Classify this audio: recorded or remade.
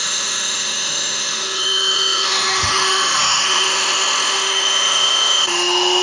remade